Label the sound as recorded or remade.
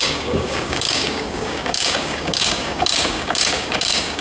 remade